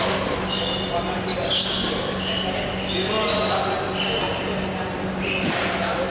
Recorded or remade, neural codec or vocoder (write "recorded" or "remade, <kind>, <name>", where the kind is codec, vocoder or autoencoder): recorded